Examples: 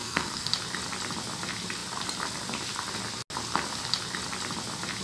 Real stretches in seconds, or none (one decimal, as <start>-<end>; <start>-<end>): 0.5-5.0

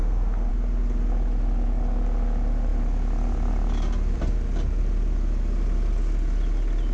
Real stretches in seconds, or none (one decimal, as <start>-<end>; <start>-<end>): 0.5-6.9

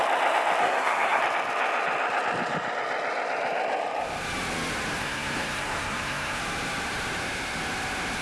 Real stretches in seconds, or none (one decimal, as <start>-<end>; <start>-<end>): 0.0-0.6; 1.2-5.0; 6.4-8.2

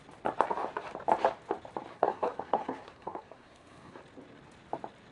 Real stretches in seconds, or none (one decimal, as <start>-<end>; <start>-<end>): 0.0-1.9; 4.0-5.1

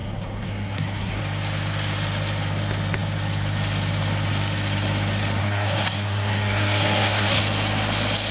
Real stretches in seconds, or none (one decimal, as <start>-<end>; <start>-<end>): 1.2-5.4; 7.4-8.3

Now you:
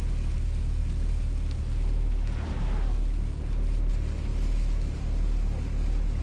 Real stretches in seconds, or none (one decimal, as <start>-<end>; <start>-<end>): 0.0-6.2